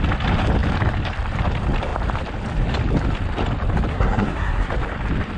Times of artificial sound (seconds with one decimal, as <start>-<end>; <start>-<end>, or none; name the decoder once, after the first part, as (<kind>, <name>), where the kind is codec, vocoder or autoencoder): 3.9-4.7 (codec, SNAC)